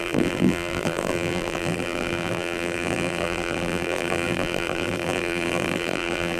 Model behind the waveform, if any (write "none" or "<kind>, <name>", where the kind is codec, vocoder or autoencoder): vocoder, BigVGAN v2